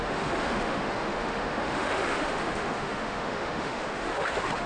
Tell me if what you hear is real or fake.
fake